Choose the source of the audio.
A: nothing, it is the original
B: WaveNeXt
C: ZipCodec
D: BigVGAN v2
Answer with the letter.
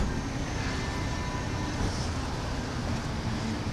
A